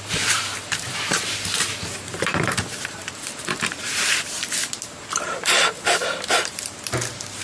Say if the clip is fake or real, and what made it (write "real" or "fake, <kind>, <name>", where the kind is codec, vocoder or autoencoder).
fake, vocoder, BigVGAN v2